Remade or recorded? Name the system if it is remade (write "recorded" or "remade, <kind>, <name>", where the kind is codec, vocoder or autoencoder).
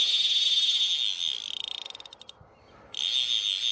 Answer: recorded